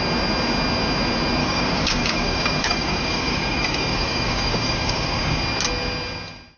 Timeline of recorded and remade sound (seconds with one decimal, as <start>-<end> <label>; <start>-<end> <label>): 0.0-1.4 recorded; 1.4-5.4 remade; 5.4-6.6 recorded